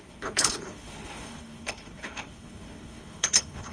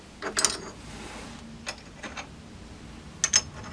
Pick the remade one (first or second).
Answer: first